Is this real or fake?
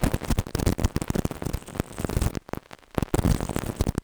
real